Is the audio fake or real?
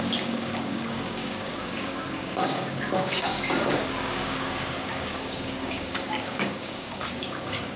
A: fake